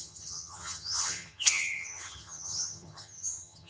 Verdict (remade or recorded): remade